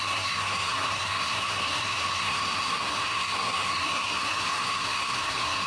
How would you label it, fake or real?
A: fake